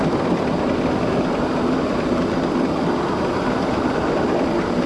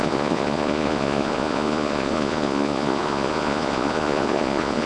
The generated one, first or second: second